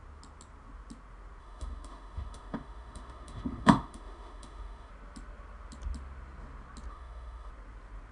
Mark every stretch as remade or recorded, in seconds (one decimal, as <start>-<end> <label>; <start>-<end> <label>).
0.0-1.4 recorded; 1.4-4.9 remade; 4.9-6.9 recorded; 6.9-7.5 remade; 7.5-8.1 recorded